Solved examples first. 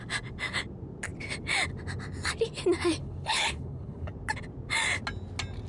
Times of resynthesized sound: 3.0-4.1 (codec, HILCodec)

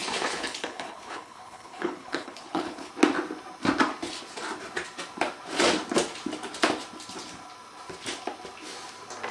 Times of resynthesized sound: 0.0-2.9 (codec, HILCodec)

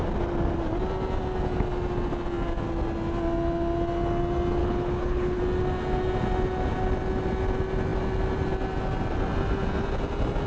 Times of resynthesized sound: 4.6-5.4 (codec, HILCodec)

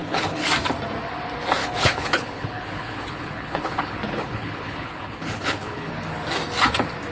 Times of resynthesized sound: 0.0-0.5 (codec, HILCodec); 1.6-5.9

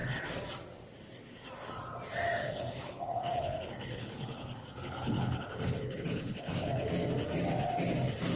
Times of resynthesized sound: 2.4-6.9 (codec, HILCodec)

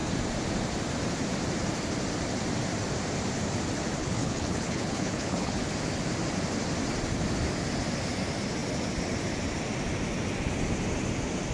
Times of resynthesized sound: 4.0-5.7 (codec, HILCodec)